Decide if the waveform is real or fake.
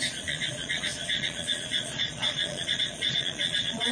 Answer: fake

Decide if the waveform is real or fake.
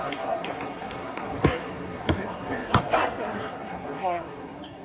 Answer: fake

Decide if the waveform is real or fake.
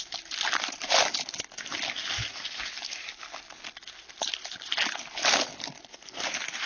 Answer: real